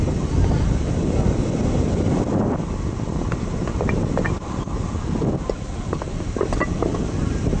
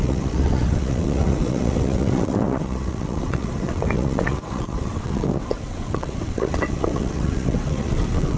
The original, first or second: first